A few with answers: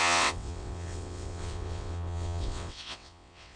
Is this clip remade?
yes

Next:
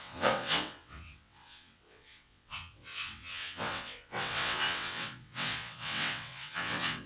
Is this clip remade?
yes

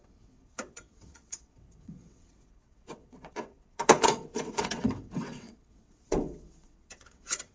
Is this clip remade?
yes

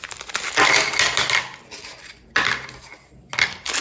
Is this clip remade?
no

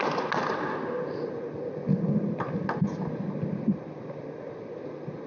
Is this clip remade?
no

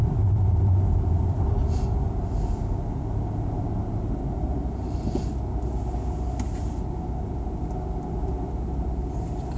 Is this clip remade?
no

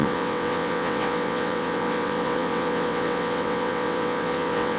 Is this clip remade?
yes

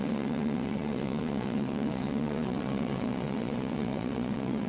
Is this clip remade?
yes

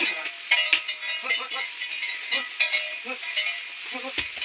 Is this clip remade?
no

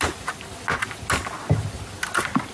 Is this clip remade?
no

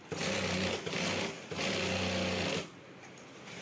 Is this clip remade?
no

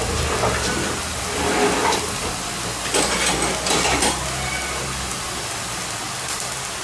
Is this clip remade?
no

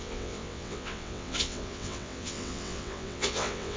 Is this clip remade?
yes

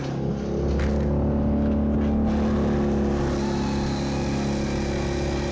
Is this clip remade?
no